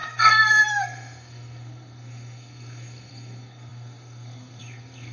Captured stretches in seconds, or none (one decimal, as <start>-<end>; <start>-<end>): none